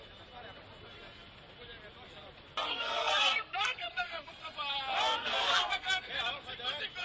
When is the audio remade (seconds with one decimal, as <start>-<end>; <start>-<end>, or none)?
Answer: 2.7-4.3; 5.2-6.1